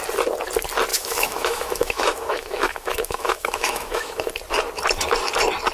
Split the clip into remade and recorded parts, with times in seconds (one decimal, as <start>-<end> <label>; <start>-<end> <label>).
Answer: 0.0-0.9 recorded; 0.9-4.3 remade; 4.3-5.7 recorded